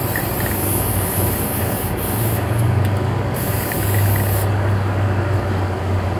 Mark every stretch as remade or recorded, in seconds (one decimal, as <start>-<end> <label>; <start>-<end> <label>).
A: 0.0-0.5 recorded; 0.5-6.2 remade